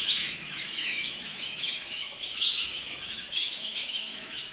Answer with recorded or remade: remade